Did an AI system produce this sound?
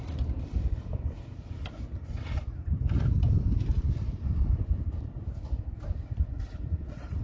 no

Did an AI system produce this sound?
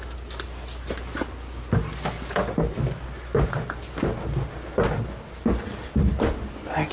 no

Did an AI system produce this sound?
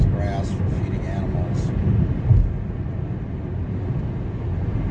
no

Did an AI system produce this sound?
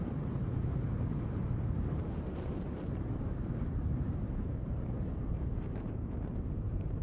yes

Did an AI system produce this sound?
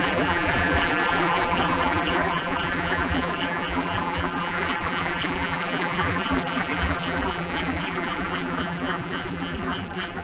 yes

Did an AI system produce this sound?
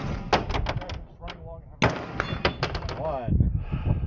no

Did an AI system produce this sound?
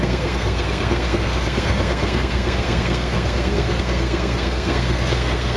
yes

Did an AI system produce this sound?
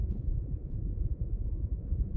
yes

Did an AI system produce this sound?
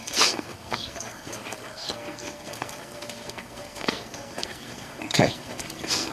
yes